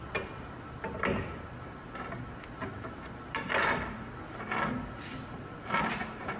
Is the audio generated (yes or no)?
no